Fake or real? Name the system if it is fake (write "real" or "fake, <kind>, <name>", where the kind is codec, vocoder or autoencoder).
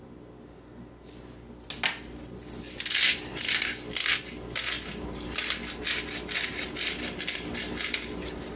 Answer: real